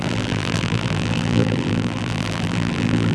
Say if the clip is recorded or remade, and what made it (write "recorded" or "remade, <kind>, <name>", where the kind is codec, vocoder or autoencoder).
remade, vocoder, BigVGAN v2